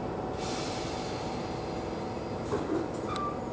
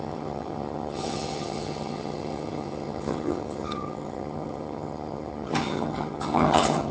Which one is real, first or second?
first